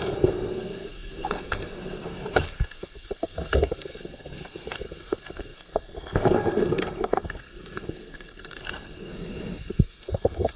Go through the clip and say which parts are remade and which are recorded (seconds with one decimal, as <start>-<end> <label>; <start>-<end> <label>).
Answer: 0.0-9.1 remade; 9.1-9.7 recorded; 9.7-10.6 remade